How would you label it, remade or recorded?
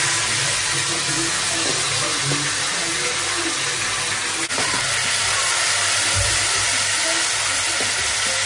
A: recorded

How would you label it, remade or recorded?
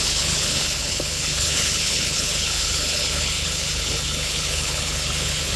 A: remade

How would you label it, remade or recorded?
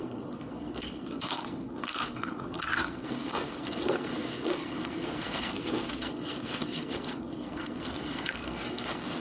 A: remade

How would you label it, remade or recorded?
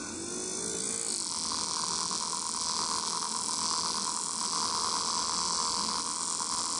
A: recorded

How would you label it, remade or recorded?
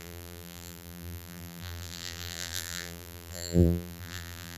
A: remade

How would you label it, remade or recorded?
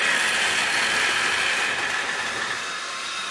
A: recorded